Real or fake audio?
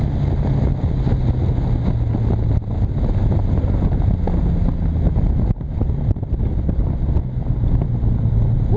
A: real